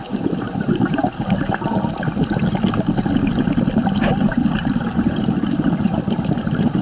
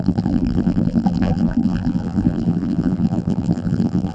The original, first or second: first